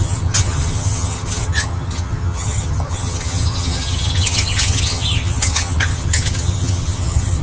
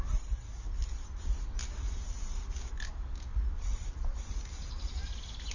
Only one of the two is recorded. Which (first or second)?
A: second